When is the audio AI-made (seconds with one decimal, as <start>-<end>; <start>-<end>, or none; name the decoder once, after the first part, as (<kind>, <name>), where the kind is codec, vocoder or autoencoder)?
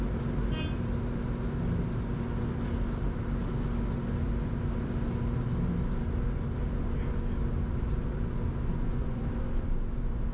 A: 8.7-9.2 (vocoder, Vocos)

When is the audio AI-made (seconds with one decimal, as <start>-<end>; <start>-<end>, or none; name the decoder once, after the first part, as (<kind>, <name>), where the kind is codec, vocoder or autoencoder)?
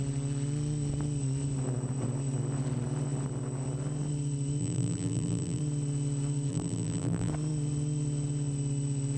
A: 4.6-5.6 (vocoder, BigVGAN v2); 6.5-7.3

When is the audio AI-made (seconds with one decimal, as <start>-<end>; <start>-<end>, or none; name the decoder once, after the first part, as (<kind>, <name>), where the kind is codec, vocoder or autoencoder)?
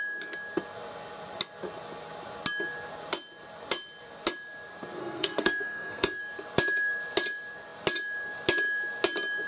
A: 5.0-6.2 (codec, SNAC)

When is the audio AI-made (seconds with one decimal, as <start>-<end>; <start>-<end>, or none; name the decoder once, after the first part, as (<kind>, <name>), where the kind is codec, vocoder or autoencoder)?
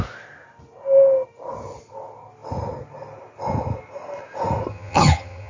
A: 4.7-5.5 (vocoder, HiFi-GAN)